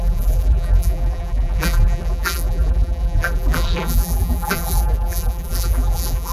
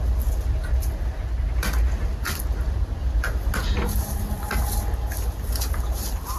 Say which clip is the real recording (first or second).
second